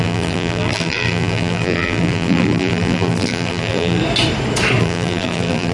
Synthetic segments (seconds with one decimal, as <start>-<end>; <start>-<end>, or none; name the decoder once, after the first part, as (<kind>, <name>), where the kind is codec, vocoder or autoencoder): 0.0-4.0 (vocoder, BigVGAN v2); 4.8-5.7